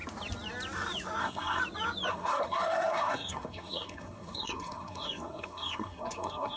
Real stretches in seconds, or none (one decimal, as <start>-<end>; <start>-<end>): 0.0-1.2; 1.6-2.1